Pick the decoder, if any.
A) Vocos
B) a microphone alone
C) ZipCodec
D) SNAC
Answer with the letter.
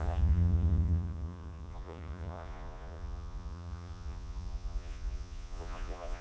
A